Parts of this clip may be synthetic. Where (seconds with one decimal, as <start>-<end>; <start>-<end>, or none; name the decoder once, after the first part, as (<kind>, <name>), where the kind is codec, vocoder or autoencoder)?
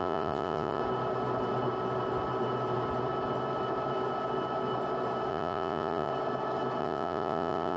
0.0-0.8 (vocoder, Vocos); 5.3-6.1; 6.8-7.8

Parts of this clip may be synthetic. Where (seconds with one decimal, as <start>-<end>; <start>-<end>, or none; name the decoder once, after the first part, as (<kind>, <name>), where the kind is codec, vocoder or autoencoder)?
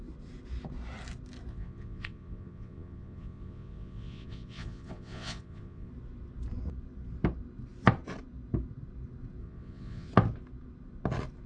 1.5-5.9 (vocoder, Vocos); 9.4-10.1